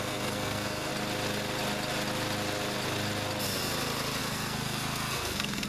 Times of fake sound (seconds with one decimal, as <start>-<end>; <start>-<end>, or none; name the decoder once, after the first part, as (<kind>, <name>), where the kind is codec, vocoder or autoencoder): 0.0-0.9 (codec, SNAC); 4.2-5.7